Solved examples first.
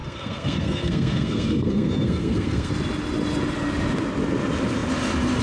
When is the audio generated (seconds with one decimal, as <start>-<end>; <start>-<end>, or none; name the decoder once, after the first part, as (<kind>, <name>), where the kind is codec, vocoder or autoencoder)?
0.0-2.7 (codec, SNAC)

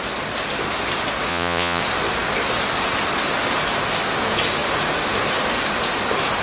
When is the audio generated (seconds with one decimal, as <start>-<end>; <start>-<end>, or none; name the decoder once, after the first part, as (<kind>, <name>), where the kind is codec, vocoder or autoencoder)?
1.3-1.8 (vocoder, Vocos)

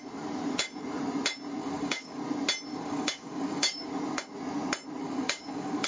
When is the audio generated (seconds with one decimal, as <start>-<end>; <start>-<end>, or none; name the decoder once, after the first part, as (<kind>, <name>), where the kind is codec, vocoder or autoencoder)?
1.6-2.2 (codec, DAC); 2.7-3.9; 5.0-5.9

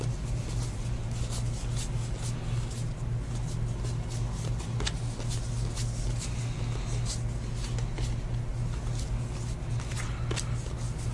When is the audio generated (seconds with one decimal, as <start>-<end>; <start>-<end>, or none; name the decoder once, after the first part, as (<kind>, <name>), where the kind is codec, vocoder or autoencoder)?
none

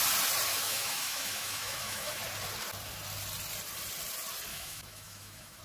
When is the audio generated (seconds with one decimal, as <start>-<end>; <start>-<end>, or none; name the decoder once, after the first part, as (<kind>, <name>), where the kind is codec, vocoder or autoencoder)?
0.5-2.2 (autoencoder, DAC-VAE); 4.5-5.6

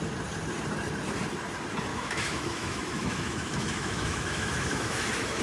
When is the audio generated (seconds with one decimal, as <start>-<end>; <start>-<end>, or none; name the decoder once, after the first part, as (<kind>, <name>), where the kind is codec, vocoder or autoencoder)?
1.9-5.4 (autoencoder, DAC-VAE)

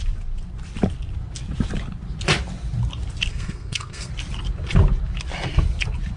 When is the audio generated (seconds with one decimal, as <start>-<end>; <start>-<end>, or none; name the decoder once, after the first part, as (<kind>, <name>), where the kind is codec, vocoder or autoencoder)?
3.3-4.1 (codec, SNAC)

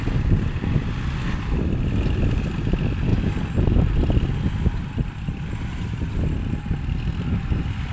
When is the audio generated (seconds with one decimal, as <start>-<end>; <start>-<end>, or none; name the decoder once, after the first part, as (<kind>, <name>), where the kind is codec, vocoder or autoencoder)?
none